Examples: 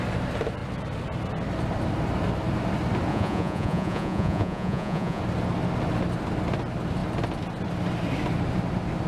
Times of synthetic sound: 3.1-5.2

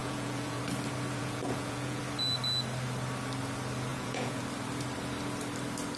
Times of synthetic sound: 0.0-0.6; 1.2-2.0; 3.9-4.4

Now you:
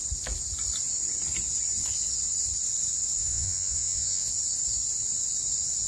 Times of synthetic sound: 3.2-4.3

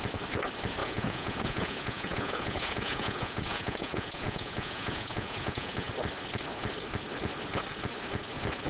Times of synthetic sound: 0.8-5.9